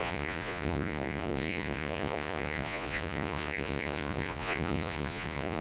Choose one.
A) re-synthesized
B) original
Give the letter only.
A